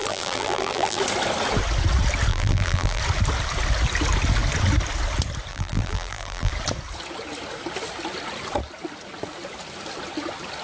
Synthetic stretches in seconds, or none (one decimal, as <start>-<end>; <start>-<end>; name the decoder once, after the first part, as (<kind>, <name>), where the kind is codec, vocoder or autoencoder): 0.0-1.0 (vocoder, BigVGAN v2); 2.3-3.0; 5.5-6.5

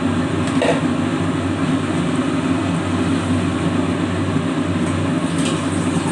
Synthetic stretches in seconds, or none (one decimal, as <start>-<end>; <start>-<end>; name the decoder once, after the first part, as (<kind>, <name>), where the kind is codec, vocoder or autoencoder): none